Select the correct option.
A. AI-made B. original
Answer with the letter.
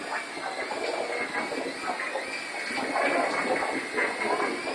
B